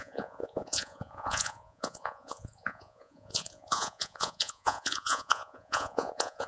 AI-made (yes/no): yes